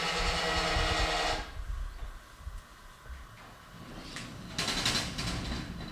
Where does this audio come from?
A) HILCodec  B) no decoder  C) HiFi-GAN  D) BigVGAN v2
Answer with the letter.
B